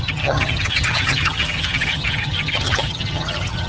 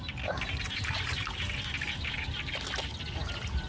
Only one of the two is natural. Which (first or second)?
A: second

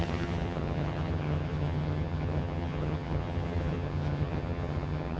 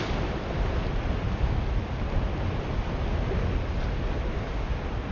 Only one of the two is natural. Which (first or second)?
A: second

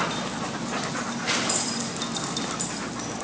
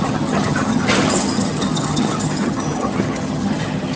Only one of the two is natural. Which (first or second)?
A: first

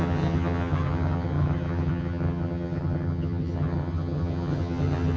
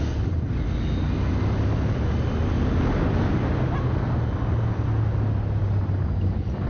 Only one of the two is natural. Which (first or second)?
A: second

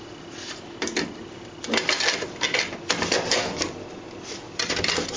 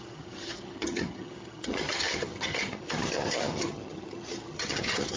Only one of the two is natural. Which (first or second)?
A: first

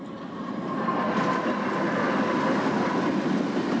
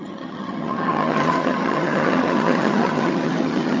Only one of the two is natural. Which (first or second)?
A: first